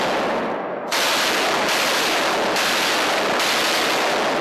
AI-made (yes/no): no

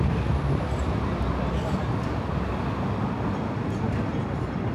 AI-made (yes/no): no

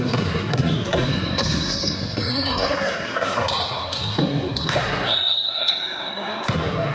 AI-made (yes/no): yes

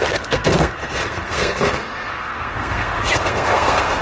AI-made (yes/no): yes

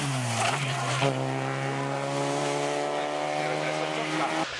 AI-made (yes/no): no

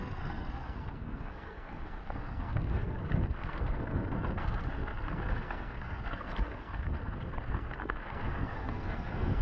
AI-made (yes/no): yes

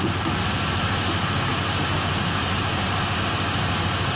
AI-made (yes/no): no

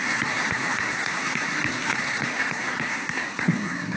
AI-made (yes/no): yes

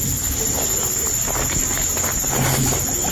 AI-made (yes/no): no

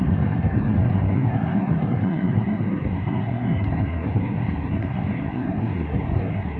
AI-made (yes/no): yes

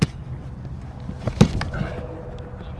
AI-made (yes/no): no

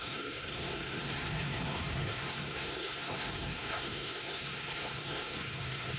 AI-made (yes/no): yes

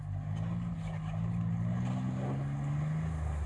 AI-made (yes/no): no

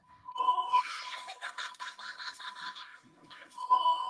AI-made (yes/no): yes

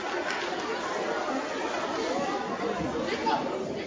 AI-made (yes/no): no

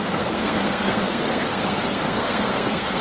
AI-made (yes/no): yes